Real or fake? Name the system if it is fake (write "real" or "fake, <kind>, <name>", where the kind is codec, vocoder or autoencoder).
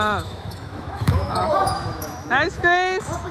fake, autoencoder, DAC-VAE